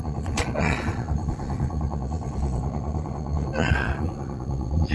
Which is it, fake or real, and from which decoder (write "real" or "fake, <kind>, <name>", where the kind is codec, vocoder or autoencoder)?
fake, vocoder, Vocos